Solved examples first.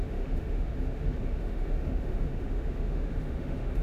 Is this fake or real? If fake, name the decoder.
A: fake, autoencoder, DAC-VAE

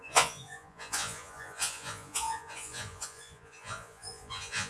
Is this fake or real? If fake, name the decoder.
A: fake, vocoder, Vocos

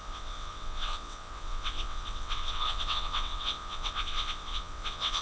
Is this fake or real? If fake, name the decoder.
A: fake, vocoder, WaveNeXt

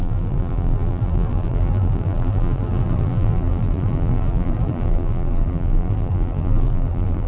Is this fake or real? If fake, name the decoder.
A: fake, vocoder, BigVGAN v2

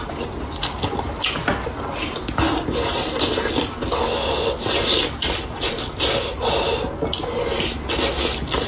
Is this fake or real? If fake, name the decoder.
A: real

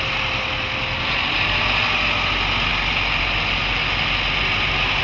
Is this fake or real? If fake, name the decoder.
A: real